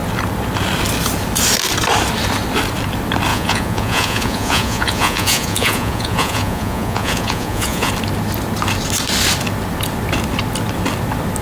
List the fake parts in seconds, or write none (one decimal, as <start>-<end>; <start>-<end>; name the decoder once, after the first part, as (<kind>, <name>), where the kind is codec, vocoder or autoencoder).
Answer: 3.3-7.9 (vocoder, Vocos)